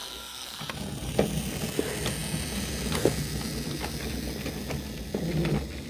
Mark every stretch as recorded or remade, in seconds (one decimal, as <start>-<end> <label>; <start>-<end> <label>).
0.0-0.6 remade; 0.6-5.9 recorded